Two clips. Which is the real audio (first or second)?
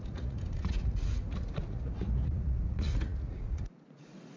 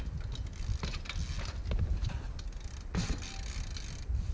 second